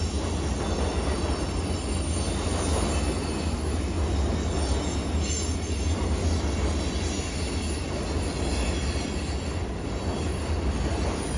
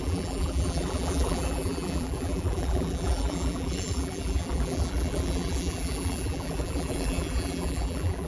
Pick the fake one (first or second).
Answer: second